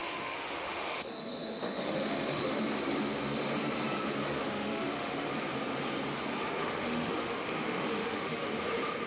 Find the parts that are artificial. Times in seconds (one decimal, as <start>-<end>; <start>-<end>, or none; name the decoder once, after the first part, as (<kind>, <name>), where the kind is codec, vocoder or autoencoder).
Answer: 0.0-2.6 (autoencoder, DAC-VAE); 4.4-5.3; 6.6-8.5